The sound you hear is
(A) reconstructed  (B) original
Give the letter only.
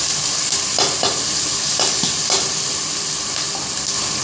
B